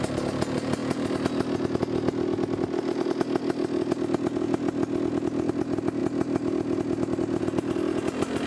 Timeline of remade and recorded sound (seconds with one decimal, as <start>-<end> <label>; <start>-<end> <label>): 0.0-8.5 recorded